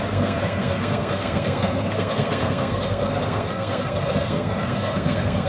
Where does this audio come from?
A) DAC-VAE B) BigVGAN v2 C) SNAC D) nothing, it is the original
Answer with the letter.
C